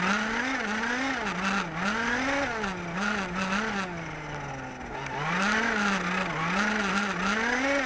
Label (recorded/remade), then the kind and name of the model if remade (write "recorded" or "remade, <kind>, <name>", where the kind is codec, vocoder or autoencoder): recorded